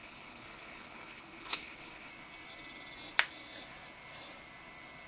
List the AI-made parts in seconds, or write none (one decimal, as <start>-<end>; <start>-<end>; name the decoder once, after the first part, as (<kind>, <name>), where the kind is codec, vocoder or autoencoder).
0.0-2.1 (codec, HILCodec)